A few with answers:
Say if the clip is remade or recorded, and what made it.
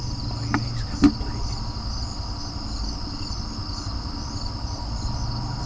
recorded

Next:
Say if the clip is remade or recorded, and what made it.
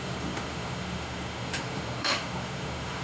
remade, autoencoder, DAC-VAE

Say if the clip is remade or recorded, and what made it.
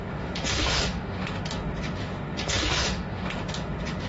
remade, autoencoder, DAC-VAE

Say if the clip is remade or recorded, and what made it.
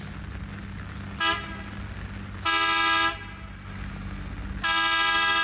recorded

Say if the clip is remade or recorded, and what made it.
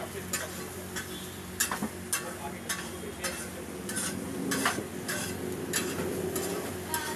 recorded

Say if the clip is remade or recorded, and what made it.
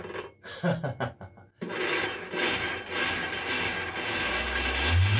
recorded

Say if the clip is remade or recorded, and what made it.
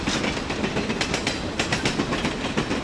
recorded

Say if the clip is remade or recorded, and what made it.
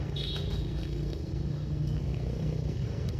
remade, codec, SNAC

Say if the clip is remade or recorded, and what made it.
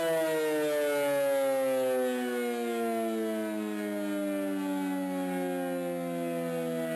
recorded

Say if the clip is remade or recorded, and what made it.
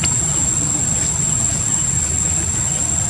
recorded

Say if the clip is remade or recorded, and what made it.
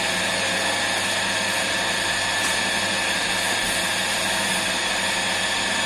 recorded